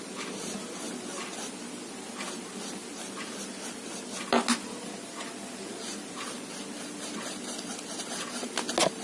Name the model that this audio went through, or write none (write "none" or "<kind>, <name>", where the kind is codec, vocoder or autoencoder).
none